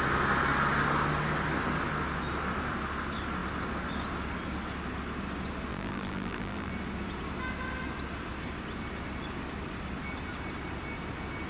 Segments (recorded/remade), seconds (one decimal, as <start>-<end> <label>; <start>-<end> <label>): 0.0-5.7 recorded; 5.7-6.7 remade; 6.7-11.5 recorded